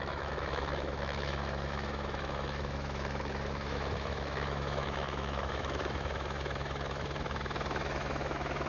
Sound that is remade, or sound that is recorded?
remade